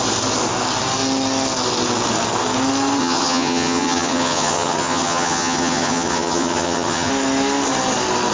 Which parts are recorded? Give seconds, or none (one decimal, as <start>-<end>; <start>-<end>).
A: 0.0-3.0; 7.1-8.3